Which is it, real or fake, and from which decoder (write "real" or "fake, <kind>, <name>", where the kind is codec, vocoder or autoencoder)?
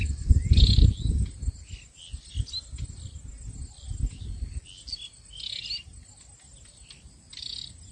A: real